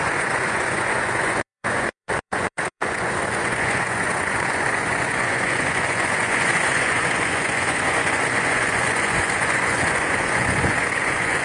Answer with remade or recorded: remade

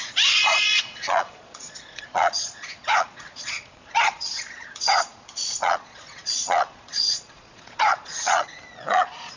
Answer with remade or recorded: remade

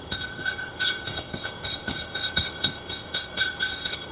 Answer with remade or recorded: remade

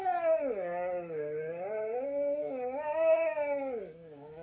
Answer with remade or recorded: remade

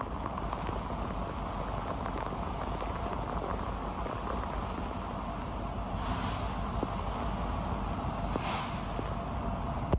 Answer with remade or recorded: recorded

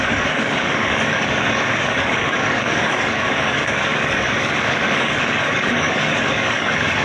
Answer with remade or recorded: remade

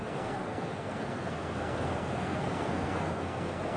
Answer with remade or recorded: remade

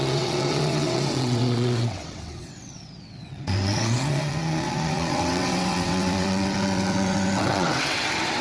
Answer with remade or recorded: remade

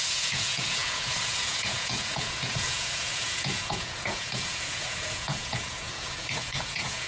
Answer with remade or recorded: remade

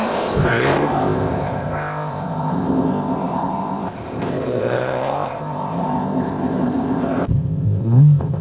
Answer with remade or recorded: remade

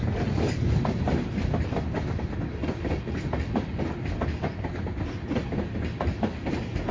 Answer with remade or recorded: recorded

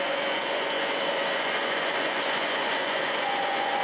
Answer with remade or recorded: remade